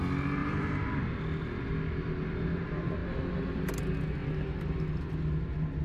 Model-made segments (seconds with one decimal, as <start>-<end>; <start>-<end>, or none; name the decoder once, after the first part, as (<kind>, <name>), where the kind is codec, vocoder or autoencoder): 0.4-1.0 (vocoder, BigVGAN v2)